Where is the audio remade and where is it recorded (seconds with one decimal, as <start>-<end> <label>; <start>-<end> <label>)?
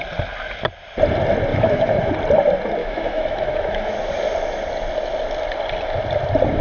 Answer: 0.0-1.5 recorded; 1.5-2.1 remade; 2.1-2.8 recorded; 2.8-4.0 remade; 4.0-6.6 recorded